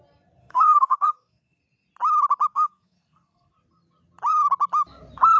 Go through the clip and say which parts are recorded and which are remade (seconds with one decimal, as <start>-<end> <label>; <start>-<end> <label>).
0.0-0.4 recorded; 0.4-1.6 remade; 1.6-2.5 recorded; 2.5-3.5 remade; 3.5-5.4 recorded